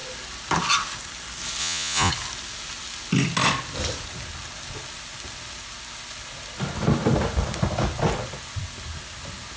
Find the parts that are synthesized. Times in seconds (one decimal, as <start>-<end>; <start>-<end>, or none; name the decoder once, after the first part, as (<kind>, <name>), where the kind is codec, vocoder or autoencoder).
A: 1.6-2.1 (vocoder, Vocos)